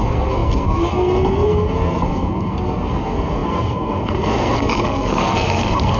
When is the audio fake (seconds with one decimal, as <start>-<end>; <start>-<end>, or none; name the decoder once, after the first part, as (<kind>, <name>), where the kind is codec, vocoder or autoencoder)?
0.0-6.0 (codec, SNAC)